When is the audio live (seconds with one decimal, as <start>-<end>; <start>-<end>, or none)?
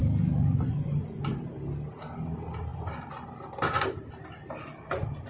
0.0-5.3